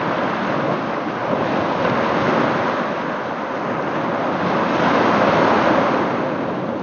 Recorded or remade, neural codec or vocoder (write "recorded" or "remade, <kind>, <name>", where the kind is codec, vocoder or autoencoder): recorded